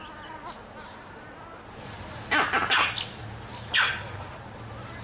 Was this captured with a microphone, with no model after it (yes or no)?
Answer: yes